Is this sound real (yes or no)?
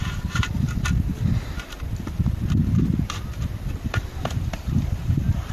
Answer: no